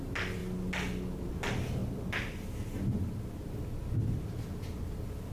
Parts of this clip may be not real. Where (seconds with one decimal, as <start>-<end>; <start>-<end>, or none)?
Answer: none